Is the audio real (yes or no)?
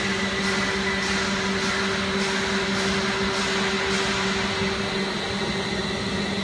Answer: yes